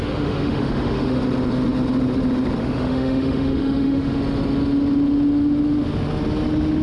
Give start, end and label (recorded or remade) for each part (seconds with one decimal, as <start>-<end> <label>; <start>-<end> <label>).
0.0-1.2 remade; 1.2-2.6 recorded; 2.6-4.2 remade; 4.2-6.8 recorded